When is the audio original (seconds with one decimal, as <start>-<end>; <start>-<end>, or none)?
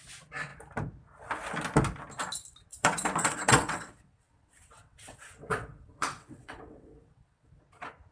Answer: 0.0-2.7; 7.6-8.1